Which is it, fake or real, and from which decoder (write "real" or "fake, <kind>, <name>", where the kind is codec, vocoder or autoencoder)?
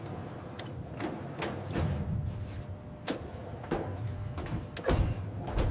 real